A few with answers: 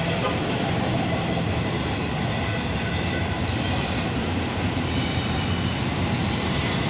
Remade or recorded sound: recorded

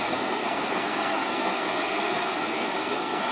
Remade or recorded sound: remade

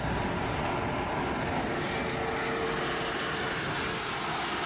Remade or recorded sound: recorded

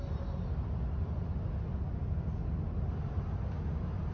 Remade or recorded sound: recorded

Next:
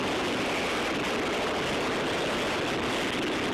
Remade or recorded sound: recorded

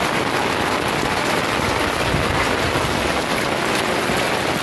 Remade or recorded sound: recorded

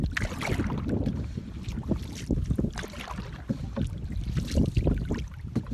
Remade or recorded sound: recorded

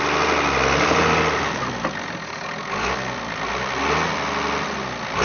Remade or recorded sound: recorded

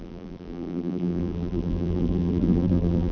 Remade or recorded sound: remade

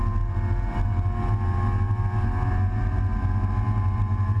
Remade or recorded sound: recorded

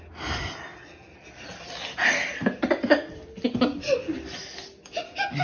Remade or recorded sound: recorded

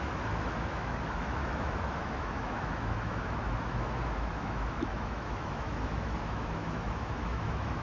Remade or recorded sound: remade